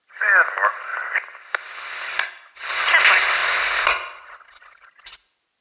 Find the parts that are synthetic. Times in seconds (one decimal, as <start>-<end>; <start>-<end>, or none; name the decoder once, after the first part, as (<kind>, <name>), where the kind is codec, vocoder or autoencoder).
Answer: none